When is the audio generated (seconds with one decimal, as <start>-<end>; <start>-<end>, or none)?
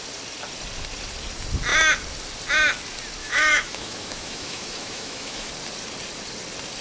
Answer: 3.2-5.5